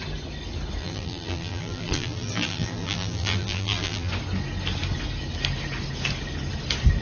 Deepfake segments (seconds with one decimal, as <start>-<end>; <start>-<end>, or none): 0.8-4.1